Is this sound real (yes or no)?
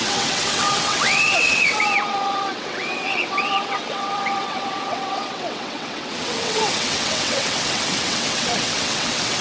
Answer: no